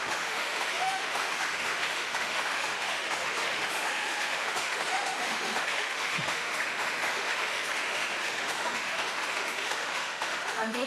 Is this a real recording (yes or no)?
no